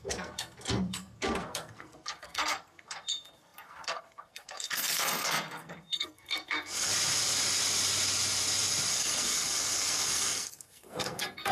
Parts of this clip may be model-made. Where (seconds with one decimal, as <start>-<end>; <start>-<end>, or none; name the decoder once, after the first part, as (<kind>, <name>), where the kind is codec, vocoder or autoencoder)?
0.0-6.9 (codec, SNAC); 8.9-11.5